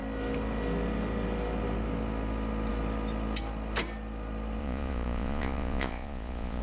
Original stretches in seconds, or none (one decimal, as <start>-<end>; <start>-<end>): 0.0-4.6